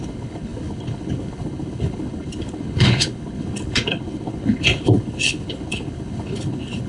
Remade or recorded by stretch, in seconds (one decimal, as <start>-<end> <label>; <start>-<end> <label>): 0.0-6.9 remade